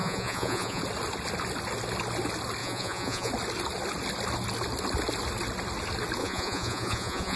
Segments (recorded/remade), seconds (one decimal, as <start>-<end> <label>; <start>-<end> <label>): 0.0-0.8 remade; 0.8-2.6 recorded; 2.6-3.3 remade; 3.3-6.2 recorded; 6.2-7.4 remade

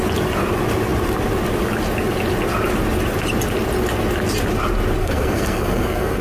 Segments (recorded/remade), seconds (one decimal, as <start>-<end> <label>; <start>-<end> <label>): 0.0-5.0 recorded; 5.0-6.2 remade

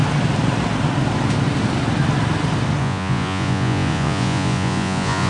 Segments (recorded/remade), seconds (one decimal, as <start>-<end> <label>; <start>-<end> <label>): 0.0-2.8 recorded; 2.8-5.3 remade

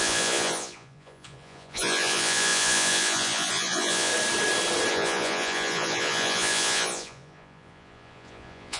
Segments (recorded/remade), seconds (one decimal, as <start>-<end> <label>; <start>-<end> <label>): 0.0-4.1 remade; 4.1-4.9 recorded; 4.9-8.8 remade

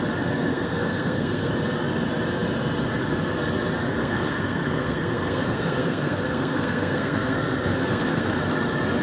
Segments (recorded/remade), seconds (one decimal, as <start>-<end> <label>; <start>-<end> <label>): 0.0-0.5 recorded; 0.5-1.5 remade; 1.5-4.0 recorded; 4.0-8.4 remade; 8.4-9.0 recorded

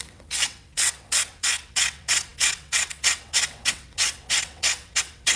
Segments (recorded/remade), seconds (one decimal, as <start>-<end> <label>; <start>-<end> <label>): 0.0-5.4 remade

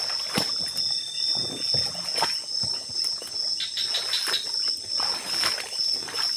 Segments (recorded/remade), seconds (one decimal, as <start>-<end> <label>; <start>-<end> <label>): 0.0-6.4 recorded